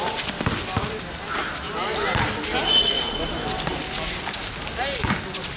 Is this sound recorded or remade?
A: recorded